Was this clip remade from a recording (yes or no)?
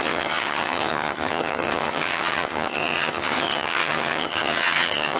yes